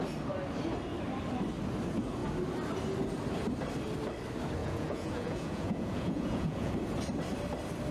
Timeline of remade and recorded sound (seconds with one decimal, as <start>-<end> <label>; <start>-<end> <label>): 0.0-4.6 recorded; 4.6-6.7 remade; 6.7-7.9 recorded